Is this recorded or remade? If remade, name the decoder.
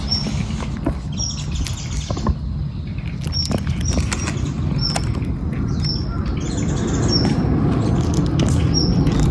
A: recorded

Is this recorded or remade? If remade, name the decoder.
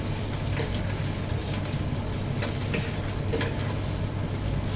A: recorded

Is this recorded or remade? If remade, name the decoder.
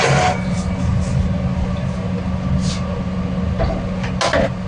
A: recorded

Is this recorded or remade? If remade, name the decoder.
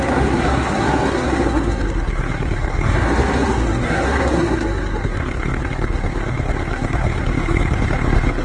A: remade, codec, SNAC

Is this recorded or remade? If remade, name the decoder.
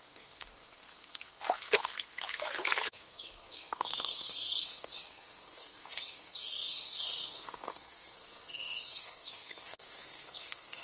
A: remade, codec, SNAC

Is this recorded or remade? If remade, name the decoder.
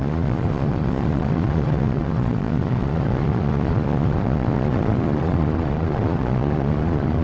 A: remade, vocoder, Vocos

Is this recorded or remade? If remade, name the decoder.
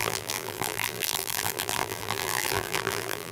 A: remade, vocoder, BigVGAN v2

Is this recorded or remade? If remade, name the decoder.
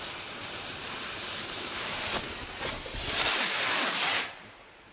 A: remade, vocoder, BigVGAN v2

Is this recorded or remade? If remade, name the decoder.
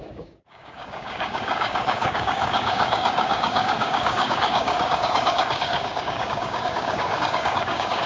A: remade, codec, DAC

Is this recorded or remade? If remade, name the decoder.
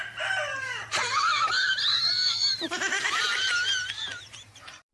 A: remade, vocoder, BigVGAN v2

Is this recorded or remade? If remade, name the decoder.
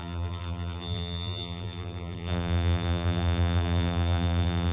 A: remade, vocoder, BigVGAN v2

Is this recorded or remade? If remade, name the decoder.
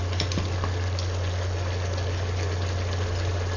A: recorded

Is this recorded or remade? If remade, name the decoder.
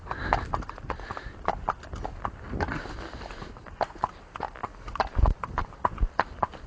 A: recorded